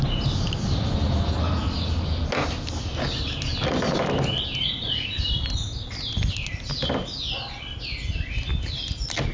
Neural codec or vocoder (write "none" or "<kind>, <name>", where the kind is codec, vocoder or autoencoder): none